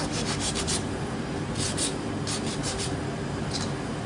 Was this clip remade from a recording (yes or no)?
yes